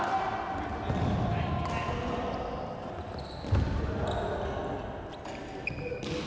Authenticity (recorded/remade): recorded